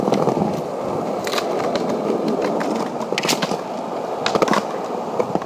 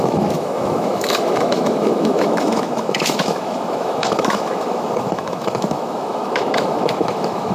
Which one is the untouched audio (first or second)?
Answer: first